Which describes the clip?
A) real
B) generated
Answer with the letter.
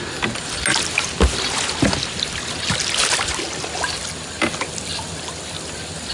A